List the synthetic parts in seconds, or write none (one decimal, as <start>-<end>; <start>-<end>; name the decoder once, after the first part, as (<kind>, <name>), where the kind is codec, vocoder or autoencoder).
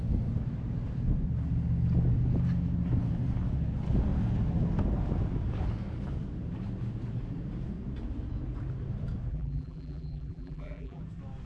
9.3-11.0 (vocoder, BigVGAN v2)